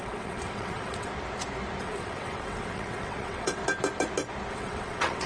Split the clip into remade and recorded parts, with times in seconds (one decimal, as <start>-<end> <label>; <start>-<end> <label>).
0.0-1.1 remade; 1.1-1.8 recorded; 1.8-3.6 remade; 3.6-4.5 recorded; 4.5-5.3 remade